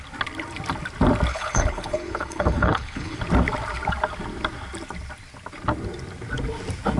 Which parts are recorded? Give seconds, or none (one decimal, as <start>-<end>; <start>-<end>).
0.0-1.3; 3.2-7.0

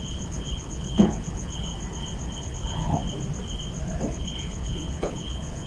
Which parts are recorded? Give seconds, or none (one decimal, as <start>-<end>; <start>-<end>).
1.7-2.4; 3.0-4.1